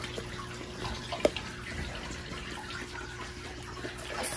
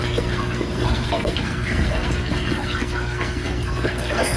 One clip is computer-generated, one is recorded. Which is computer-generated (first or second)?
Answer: second